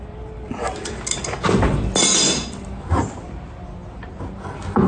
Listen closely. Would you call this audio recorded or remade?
recorded